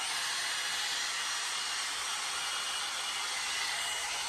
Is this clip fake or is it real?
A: real